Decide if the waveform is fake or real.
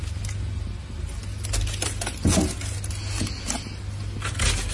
real